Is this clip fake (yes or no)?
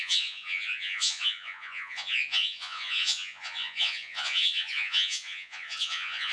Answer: yes